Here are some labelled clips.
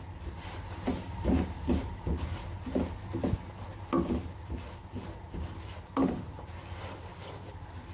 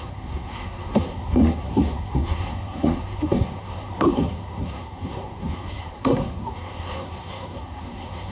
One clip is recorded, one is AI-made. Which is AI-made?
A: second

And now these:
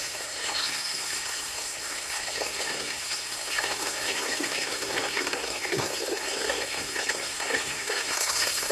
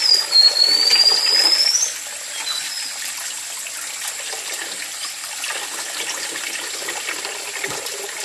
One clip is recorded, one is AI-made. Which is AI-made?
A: first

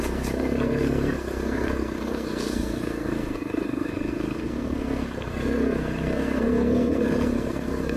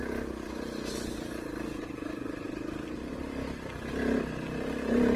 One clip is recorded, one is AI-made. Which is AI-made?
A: first